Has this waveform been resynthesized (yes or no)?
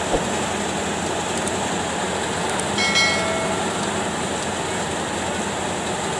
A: no